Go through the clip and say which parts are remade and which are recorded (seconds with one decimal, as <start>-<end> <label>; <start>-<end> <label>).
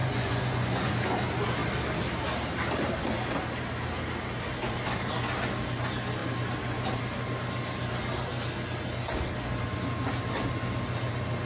0.0-0.9 remade; 0.9-11.5 recorded